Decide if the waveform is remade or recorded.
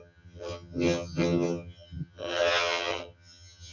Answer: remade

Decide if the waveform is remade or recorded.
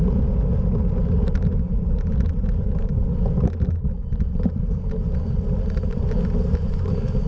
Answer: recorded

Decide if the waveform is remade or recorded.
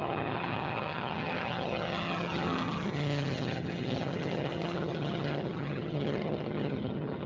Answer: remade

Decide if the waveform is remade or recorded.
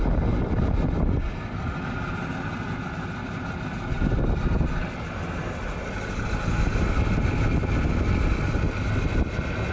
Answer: recorded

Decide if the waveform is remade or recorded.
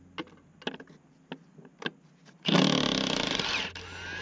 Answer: recorded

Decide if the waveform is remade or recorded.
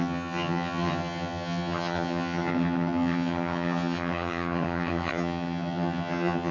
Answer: remade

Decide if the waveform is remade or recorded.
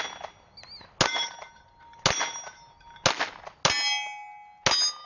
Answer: recorded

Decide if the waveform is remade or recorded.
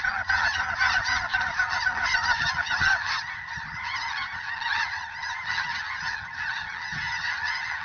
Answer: remade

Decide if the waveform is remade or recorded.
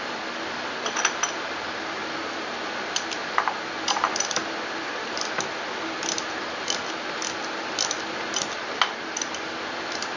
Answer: recorded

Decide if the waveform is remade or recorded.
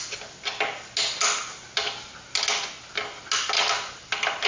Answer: recorded